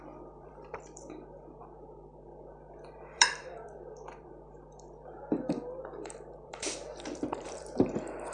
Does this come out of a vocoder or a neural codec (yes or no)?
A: yes